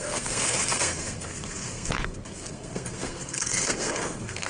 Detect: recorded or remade remade